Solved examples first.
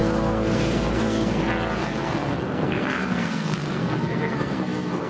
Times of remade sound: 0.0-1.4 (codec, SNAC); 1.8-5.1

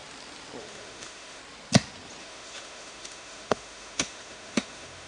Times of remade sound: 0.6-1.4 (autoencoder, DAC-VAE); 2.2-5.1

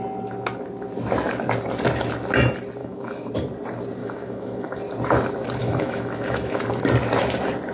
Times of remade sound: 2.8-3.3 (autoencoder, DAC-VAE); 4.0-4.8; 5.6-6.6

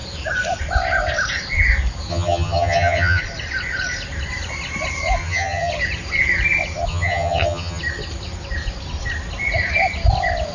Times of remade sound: 2.1-3.2 (vocoder, HiFi-GAN); 5.2-5.7; 6.9-7.8

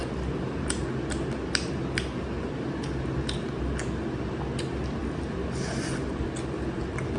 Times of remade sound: none

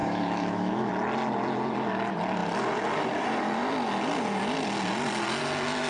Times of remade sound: 0.0-0.9 (autoencoder, DAC-VAE)

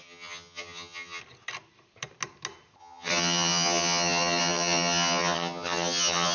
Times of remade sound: 0.0-1.2 (vocoder, HiFi-GAN); 2.8-6.3

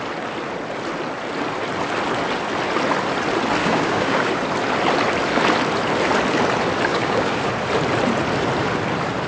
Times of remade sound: 3.6-4.4 (codec, DAC); 6.9-7.5